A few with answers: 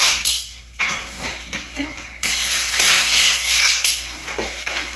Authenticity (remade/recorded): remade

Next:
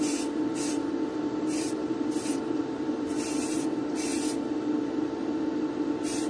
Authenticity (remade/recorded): recorded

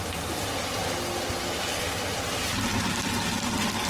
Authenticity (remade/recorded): recorded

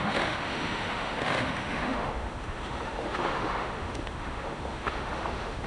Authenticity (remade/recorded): remade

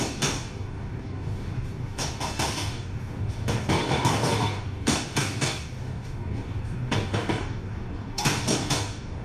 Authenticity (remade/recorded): remade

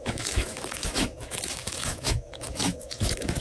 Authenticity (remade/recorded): remade